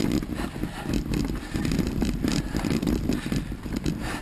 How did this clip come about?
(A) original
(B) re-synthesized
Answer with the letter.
B